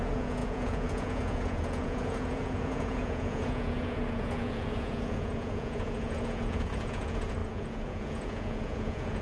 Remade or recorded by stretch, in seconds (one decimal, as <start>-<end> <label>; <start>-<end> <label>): 0.0-9.2 remade